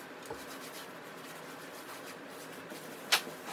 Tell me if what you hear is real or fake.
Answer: real